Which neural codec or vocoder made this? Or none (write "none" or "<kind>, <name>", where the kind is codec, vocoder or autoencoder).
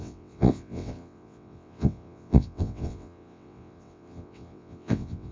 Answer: vocoder, WaveNeXt